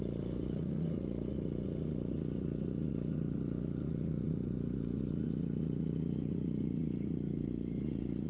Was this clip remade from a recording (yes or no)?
yes